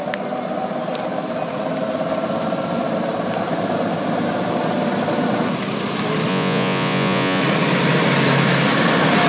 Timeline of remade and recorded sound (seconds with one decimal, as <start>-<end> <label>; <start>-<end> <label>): 0.0-6.3 recorded; 6.3-7.4 remade; 7.4-9.3 recorded